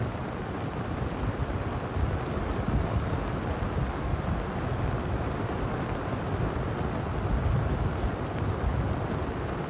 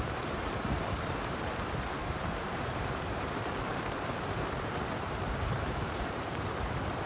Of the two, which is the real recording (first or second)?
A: first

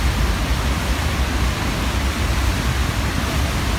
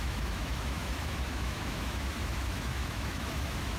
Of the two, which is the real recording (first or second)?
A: first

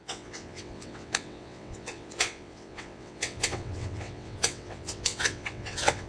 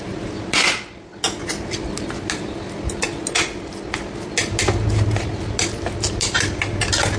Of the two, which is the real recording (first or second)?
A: second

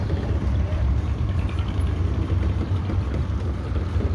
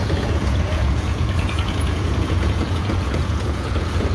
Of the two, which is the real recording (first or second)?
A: first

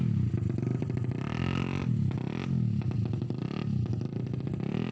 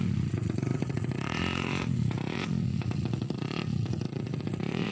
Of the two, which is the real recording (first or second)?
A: first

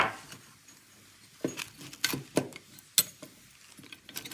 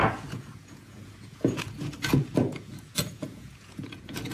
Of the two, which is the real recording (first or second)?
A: first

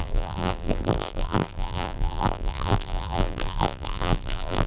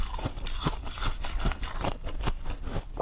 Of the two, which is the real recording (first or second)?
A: second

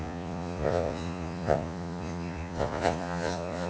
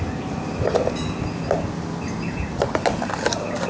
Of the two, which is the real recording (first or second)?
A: second